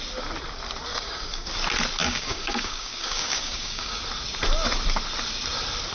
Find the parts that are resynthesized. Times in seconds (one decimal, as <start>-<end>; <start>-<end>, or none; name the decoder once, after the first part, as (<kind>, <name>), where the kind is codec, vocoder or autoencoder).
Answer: 0.9-1.5 (codec, DAC); 2.0-4.0